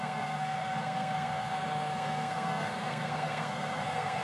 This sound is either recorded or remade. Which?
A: remade